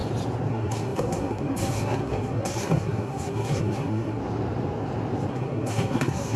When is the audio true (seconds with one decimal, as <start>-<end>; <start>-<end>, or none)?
0.0-0.5; 4.2-5.3